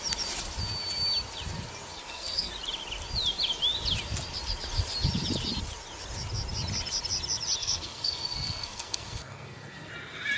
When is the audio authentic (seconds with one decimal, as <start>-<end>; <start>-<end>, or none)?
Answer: 0.0-1.9; 2.5-7.6; 9.9-10.4